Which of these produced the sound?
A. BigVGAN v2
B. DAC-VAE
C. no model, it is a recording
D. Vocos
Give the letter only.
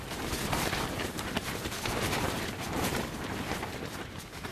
A